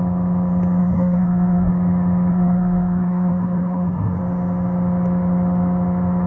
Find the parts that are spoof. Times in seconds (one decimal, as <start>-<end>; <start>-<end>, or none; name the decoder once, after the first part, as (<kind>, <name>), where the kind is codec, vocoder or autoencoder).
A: 0.8-1.7 (codec, SNAC); 2.3-4.2